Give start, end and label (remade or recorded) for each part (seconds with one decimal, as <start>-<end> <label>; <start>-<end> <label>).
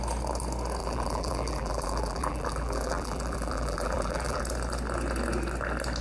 0.0-0.8 recorded; 0.8-4.4 remade; 4.4-6.0 recorded